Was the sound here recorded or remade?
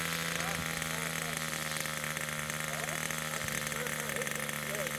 recorded